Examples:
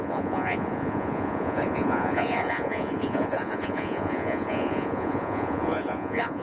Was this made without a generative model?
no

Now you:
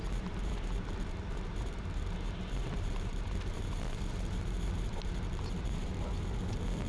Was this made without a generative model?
no